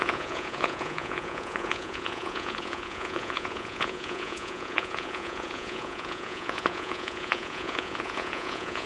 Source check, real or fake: fake